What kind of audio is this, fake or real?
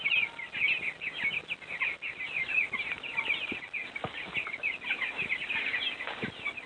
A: real